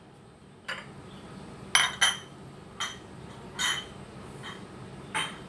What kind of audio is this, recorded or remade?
recorded